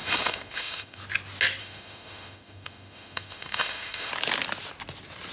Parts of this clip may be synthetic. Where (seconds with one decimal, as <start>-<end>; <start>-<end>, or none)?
0.0-1.0; 1.6-4.1